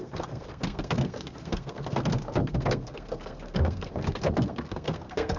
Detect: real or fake fake